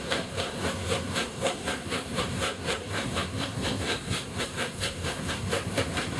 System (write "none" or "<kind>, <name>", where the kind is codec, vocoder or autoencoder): codec, SNAC